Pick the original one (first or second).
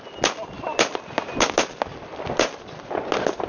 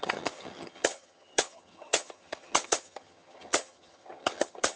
first